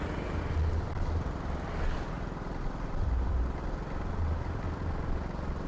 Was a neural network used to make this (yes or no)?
no